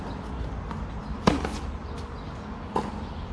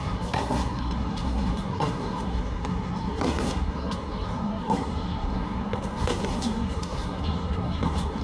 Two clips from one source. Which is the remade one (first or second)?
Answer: second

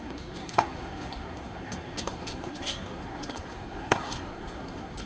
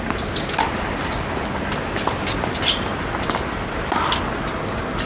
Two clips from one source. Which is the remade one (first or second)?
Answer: first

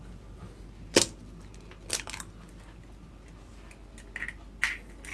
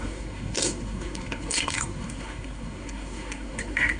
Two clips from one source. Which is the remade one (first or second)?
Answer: second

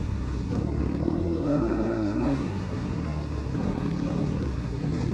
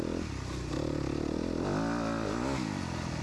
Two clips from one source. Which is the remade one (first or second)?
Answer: first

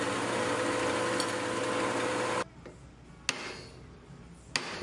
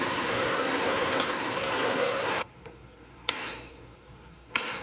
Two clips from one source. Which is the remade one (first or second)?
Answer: second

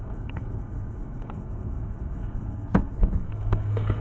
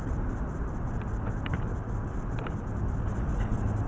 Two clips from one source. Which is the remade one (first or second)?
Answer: first